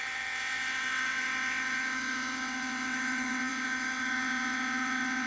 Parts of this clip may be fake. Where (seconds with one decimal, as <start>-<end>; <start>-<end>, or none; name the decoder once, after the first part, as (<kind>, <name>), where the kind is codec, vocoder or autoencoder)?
0.0-5.3 (vocoder, WaveNeXt)